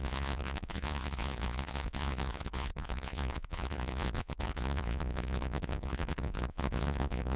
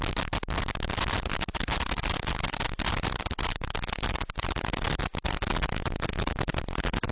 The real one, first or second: second